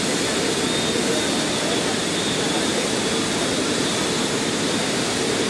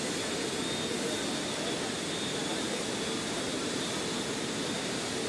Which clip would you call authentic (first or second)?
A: second